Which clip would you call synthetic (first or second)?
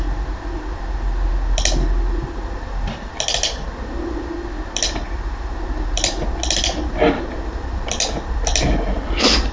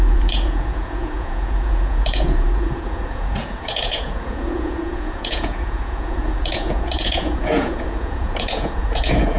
second